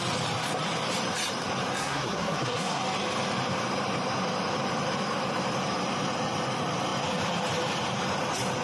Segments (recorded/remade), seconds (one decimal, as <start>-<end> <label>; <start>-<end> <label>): 0.0-1.8 recorded; 1.8-2.8 remade; 2.8-8.6 recorded